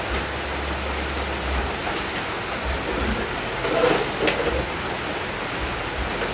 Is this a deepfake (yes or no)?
no